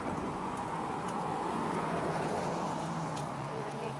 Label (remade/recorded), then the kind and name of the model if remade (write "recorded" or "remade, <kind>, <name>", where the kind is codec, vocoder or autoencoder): remade, vocoder, Vocos